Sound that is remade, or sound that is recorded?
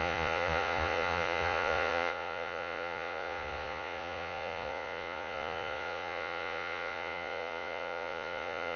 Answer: remade